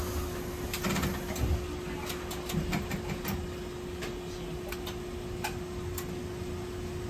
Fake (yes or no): no